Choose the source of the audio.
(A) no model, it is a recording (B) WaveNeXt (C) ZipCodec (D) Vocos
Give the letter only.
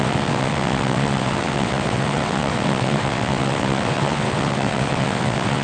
B